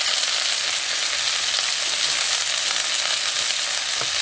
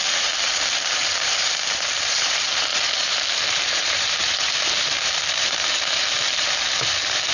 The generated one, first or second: second